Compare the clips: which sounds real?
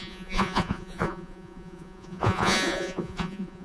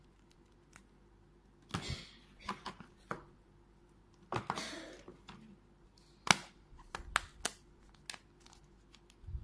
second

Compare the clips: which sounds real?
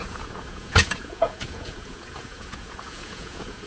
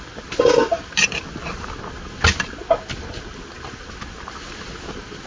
second